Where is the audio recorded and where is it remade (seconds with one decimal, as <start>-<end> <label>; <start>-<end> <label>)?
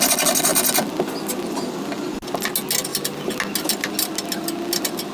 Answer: 0.0-5.1 recorded